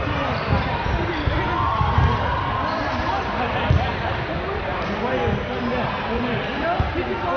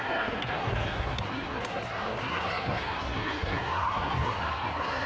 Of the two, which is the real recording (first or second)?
first